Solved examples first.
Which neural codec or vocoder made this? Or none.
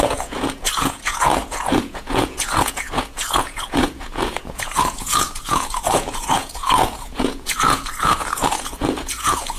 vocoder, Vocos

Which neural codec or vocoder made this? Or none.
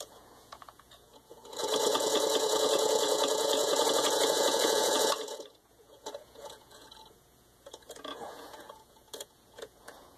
vocoder, Vocos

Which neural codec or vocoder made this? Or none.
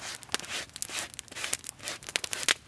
none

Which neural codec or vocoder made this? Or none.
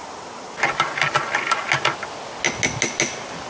none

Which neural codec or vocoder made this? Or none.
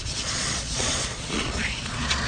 vocoder, Vocos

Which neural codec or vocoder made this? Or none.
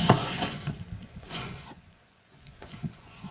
vocoder, Vocos